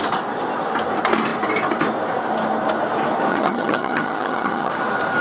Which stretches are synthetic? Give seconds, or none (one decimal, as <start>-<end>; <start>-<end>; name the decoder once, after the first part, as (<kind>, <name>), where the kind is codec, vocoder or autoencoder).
3.3-4.7 (vocoder, HiFi-GAN)